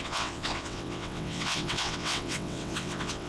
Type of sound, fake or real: fake